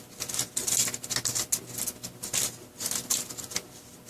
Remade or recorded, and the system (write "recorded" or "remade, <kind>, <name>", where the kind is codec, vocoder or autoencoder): recorded